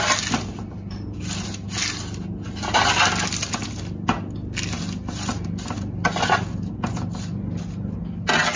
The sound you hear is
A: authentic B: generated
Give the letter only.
A